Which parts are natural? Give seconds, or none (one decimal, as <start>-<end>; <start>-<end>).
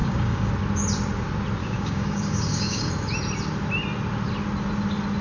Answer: 0.5-1.6; 2.9-5.2